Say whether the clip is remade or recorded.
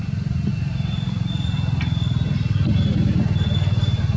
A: recorded